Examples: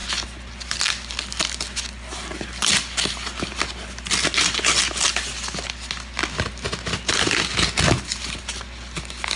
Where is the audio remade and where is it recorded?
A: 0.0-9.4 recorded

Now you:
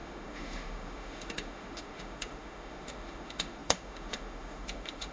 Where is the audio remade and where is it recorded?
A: 0.0-5.1 remade

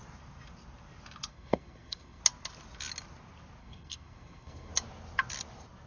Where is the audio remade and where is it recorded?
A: 0.0-1.3 recorded; 1.3-2.2 remade; 2.2-3.6 recorded; 3.6-4.7 remade; 4.7-5.9 recorded